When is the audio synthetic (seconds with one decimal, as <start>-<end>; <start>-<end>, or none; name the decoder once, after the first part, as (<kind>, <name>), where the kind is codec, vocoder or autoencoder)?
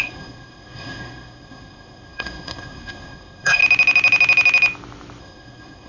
0.0-3.6 (codec, SNAC); 5.2-5.9